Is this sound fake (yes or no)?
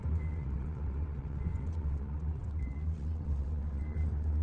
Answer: yes